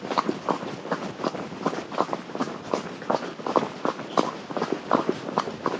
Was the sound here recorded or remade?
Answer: recorded